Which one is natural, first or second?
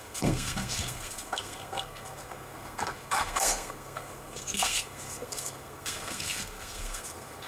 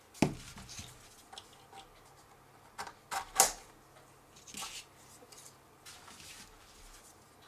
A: second